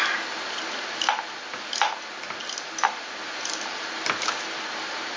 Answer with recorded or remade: recorded